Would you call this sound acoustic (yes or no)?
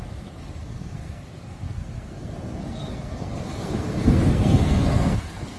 no